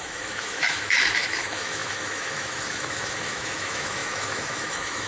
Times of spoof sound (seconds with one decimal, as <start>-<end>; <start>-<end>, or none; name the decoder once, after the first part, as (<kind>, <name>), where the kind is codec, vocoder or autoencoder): 0.0-5.1 (autoencoder, DAC-VAE)